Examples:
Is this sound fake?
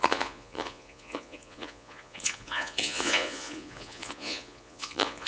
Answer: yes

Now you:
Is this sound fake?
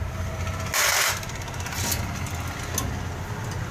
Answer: no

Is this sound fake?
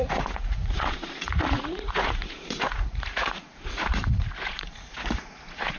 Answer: yes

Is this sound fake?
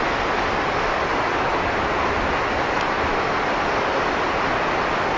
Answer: no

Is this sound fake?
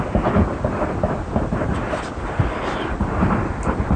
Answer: no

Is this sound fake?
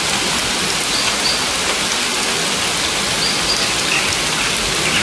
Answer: no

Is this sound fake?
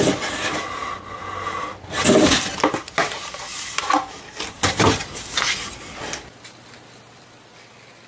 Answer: no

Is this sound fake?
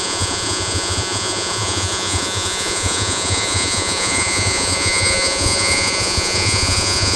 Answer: yes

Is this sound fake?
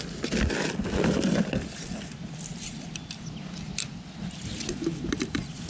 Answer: no